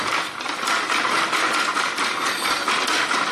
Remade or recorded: recorded